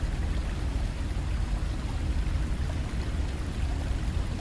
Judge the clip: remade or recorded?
recorded